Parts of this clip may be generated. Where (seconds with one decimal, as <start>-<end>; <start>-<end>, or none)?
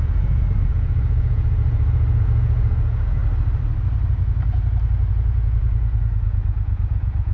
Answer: 0.0-3.2; 5.1-7.3